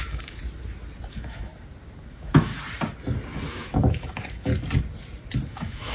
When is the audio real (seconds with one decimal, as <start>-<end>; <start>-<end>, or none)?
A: 0.4-1.1; 1.5-2.1; 2.5-3.5; 4.5-5.5